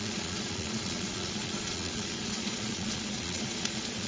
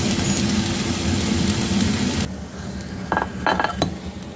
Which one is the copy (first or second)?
first